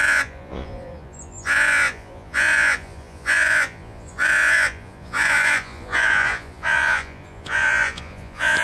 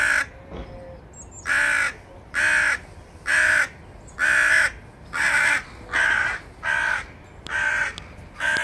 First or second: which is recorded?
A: second